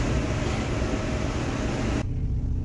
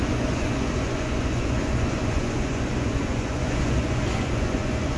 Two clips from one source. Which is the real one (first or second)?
first